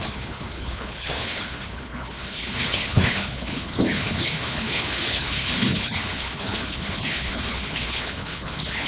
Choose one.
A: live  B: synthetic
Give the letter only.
B